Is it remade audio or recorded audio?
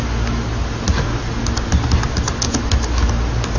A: recorded